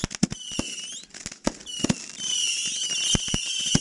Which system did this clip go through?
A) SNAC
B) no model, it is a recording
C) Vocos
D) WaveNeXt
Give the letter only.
B